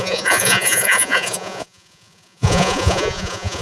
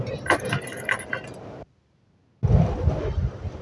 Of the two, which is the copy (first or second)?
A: first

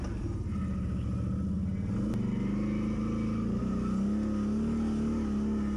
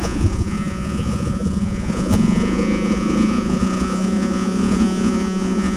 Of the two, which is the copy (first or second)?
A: second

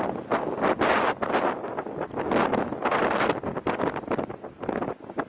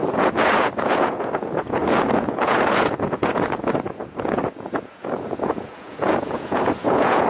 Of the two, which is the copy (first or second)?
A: second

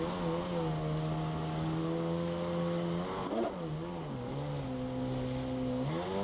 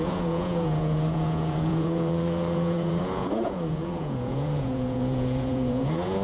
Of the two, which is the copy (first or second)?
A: second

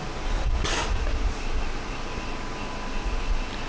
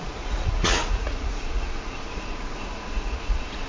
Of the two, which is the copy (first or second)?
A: second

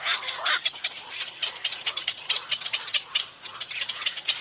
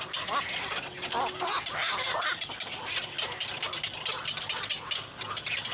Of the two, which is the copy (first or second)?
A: first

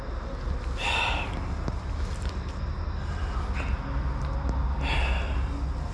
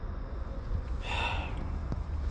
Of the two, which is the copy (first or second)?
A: second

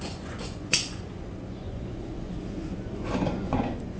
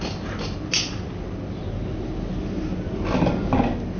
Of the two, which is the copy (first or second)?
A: first